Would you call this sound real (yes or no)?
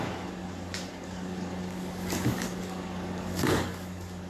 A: no